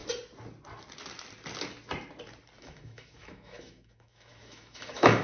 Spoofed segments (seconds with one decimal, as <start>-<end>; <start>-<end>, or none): 2.6-5.2